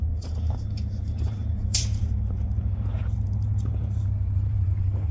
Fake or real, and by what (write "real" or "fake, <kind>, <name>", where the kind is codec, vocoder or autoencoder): fake, vocoder, BigVGAN v2